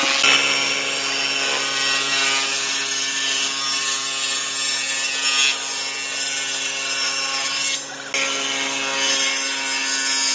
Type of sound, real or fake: real